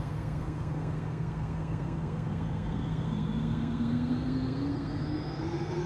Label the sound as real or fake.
fake